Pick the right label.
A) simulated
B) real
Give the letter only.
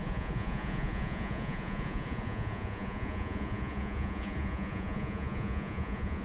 A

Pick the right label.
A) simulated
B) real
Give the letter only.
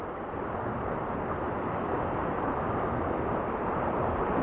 B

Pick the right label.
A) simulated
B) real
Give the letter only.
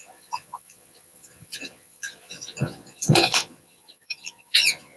A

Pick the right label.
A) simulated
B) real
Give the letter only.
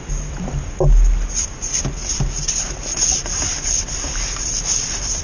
B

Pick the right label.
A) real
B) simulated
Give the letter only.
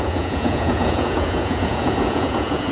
B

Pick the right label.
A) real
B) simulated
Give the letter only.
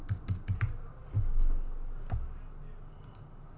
A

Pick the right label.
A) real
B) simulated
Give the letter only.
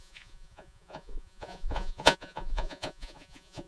B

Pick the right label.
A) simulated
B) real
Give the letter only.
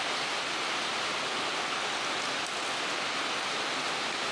B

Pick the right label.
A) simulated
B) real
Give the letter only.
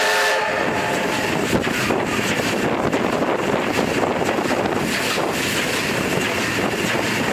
B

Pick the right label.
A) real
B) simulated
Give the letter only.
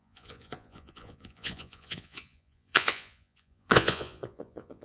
B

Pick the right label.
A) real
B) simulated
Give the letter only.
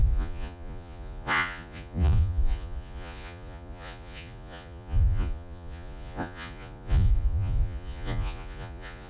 B